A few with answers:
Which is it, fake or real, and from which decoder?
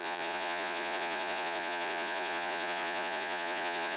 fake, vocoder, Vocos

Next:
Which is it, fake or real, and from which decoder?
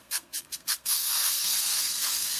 fake, codec, SNAC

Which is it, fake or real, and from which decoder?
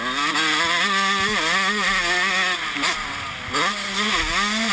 real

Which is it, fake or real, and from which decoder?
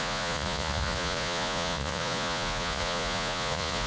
fake, vocoder, Vocos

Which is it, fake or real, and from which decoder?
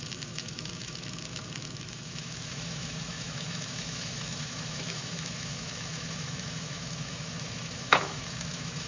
fake, autoencoder, DAC-VAE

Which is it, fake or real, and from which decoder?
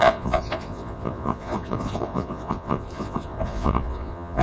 fake, vocoder, Vocos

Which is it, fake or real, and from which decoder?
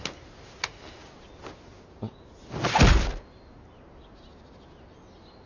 real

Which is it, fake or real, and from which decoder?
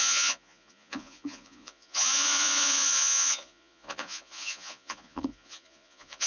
fake, vocoder, Vocos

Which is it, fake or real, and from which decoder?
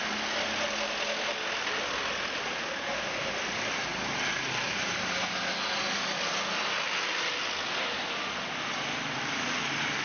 real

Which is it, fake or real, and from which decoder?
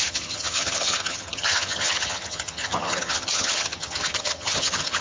fake, vocoder, HiFi-GAN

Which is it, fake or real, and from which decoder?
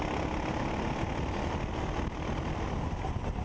real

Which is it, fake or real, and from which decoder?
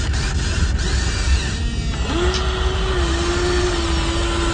real